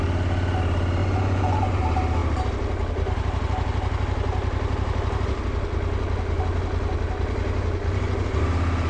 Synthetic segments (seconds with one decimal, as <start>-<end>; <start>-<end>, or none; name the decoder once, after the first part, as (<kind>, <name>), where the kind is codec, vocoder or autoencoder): 1.0-1.8 (vocoder, Vocos)

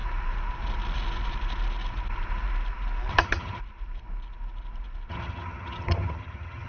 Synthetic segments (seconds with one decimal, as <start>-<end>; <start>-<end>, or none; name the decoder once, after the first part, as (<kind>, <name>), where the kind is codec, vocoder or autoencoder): 3.1-3.6 (vocoder, HiFi-GAN); 5.1-6.7

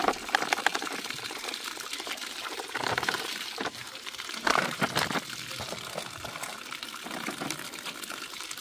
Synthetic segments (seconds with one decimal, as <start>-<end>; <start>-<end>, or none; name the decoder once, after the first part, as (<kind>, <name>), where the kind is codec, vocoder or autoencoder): 0.7-4.8 (vocoder, BigVGAN v2)

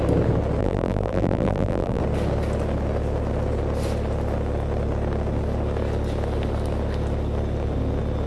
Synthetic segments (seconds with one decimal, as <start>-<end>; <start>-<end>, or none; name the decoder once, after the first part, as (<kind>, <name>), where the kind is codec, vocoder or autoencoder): 0.6-2.0 (vocoder, BigVGAN v2)